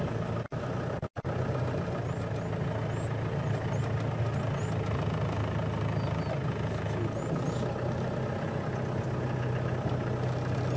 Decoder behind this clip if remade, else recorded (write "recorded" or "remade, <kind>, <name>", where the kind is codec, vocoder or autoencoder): recorded